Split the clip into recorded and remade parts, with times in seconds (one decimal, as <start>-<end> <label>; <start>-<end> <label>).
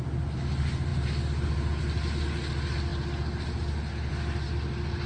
0.0-5.1 recorded